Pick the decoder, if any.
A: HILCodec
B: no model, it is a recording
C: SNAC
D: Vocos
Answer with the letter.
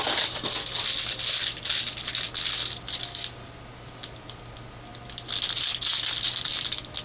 B